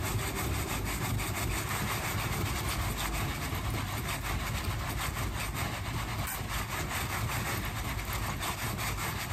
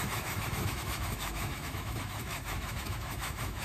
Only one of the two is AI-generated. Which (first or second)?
second